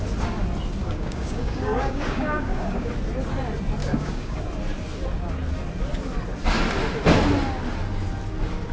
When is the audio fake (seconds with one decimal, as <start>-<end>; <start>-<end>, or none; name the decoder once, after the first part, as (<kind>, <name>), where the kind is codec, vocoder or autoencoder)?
0.8-2.9 (codec, DAC); 3.8-4.4